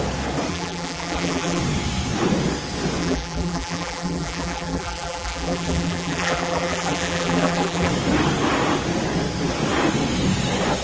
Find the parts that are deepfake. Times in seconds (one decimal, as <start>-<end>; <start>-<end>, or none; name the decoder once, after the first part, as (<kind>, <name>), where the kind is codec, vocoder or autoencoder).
0.5-1.6 (vocoder, BigVGAN v2); 3.0-7.9

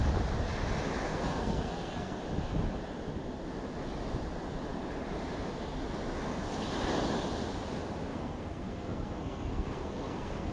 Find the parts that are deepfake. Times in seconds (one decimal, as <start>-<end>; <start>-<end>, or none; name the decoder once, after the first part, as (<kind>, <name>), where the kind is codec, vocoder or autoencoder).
1.1-2.2 (codec, SNAC); 8.1-10.5

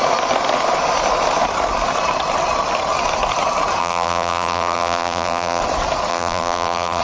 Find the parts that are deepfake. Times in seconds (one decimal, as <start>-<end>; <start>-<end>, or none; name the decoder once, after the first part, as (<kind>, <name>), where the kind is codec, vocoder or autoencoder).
3.8-5.6 (vocoder, BigVGAN v2); 6.1-7.0

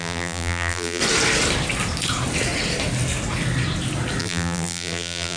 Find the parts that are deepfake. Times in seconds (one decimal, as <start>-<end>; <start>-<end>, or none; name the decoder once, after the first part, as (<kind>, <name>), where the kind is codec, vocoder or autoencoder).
0.0-1.0 (vocoder, BigVGAN v2); 4.2-5.4